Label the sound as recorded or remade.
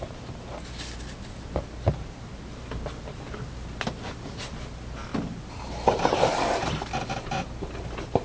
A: recorded